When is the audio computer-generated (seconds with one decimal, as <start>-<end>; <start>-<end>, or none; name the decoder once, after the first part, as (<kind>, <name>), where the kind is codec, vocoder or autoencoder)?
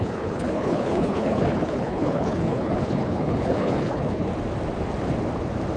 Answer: 0.0-4.3 (codec, HILCodec)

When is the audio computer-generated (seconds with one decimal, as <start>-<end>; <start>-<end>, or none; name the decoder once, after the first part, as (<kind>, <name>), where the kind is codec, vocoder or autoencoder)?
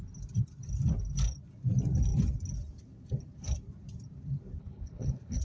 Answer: 4.6-5.4 (codec, HILCodec)